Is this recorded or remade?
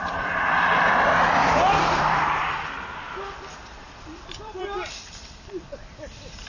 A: remade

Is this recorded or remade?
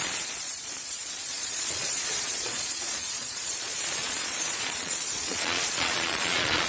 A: remade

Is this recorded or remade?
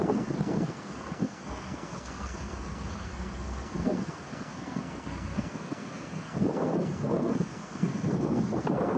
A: remade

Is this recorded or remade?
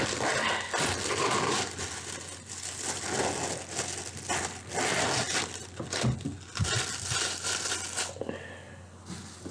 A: recorded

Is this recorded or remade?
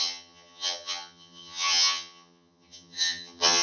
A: remade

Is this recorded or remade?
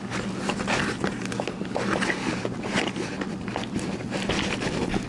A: recorded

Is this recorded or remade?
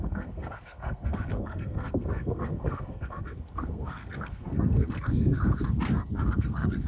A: remade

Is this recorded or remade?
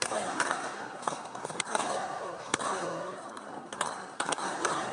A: remade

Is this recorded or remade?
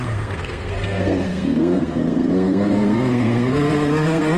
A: remade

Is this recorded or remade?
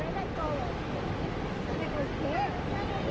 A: recorded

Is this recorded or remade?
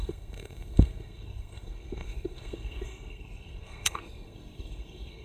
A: remade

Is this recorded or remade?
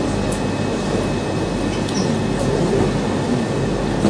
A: recorded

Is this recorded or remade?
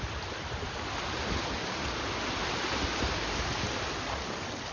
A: recorded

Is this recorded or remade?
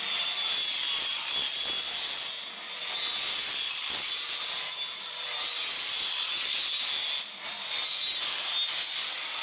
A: recorded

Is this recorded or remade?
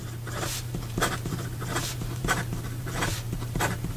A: remade